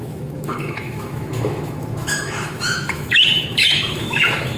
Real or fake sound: fake